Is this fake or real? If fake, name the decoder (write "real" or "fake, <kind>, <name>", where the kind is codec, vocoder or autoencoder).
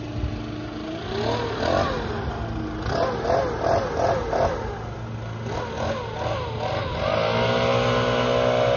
real